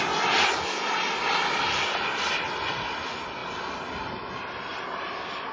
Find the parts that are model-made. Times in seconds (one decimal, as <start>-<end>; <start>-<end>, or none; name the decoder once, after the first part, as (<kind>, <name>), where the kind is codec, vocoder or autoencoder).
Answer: none